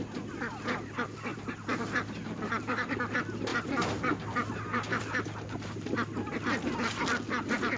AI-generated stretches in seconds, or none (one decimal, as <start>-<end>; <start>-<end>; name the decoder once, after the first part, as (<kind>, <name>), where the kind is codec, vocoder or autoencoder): 1.3-2.2 (vocoder, BigVGAN v2); 3.5-5.0